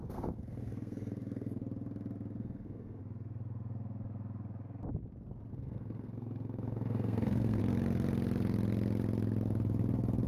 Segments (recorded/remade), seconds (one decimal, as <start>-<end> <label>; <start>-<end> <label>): 0.0-1.6 remade; 1.6-2.4 recorded; 2.4-3.0 remade; 3.0-5.5 recorded; 5.5-7.6 remade; 7.6-10.3 recorded